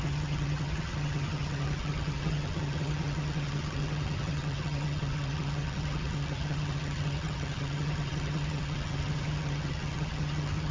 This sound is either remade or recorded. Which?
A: remade